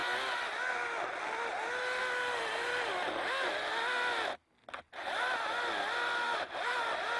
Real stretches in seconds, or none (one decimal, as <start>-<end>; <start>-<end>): 0.0-7.2